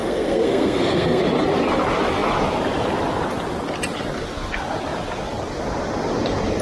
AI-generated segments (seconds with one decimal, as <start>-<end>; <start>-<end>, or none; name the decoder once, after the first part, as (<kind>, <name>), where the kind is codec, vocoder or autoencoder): 0.0-1.2 (codec, SNAC)